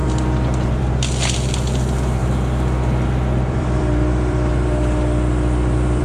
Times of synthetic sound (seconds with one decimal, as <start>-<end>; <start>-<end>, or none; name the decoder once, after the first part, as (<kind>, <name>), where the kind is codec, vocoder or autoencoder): 2.2-6.0 (vocoder, BigVGAN v2)